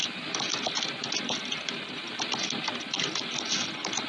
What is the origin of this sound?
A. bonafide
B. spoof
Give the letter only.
A